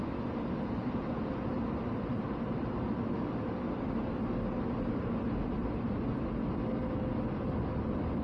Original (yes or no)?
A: yes